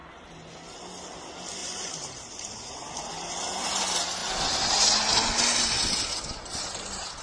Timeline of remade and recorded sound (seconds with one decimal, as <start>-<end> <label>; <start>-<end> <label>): 0.0-1.6 recorded; 1.6-2.7 remade; 2.7-7.2 recorded

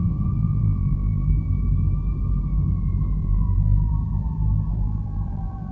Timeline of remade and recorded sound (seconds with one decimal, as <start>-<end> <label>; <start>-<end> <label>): 0.0-0.4 recorded; 0.4-1.3 remade; 1.3-3.2 recorded; 3.2-3.9 remade; 3.9-4.7 recorded; 4.7-5.7 remade

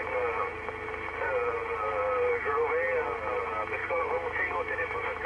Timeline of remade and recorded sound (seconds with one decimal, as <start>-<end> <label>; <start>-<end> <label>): 0.0-3.8 recorded; 3.8-5.3 remade

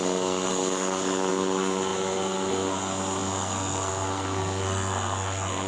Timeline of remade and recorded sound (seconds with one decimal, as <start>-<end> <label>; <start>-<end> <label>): 0.0-5.7 remade

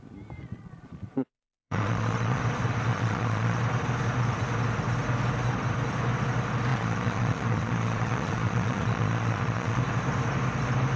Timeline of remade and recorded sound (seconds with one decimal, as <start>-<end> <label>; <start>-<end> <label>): 0.0-0.4 recorded; 0.4-2.4 remade; 2.4-2.9 recorded; 2.9-3.6 remade; 3.6-6.7 recorded; 6.7-9.8 remade; 9.8-11.0 recorded

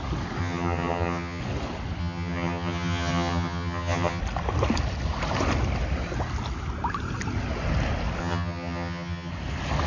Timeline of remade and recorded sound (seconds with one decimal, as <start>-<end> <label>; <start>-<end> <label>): 0.0-0.4 recorded; 0.4-1.4 remade; 1.4-2.0 recorded; 2.0-4.2 remade; 4.2-8.2 recorded; 8.2-9.3 remade; 9.3-9.9 recorded

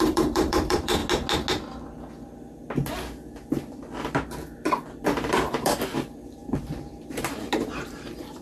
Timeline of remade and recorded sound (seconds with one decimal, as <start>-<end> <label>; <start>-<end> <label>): 0.0-1.0 remade; 1.0-5.0 recorded; 5.0-8.4 remade

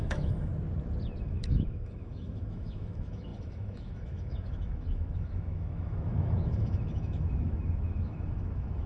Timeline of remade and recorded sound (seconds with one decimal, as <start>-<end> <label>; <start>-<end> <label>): 0.0-0.5 remade; 0.5-1.2 recorded; 1.2-8.9 remade